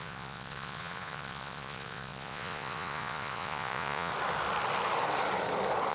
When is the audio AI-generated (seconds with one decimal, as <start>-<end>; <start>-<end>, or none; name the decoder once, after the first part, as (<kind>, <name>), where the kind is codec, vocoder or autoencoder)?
0.0-4.1 (vocoder, Vocos)